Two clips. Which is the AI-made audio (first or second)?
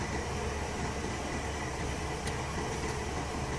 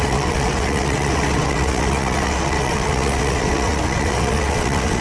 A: second